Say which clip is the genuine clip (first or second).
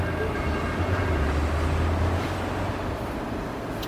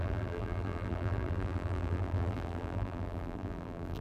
first